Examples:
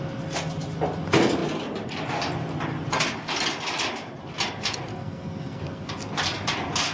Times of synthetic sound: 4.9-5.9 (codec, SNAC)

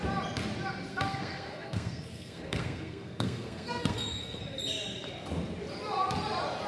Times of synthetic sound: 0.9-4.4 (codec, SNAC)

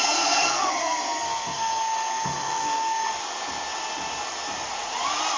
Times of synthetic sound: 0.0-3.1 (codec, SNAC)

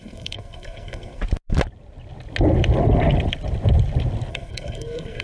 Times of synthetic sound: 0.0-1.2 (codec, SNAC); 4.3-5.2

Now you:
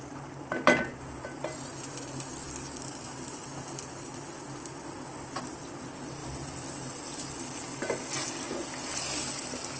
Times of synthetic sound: none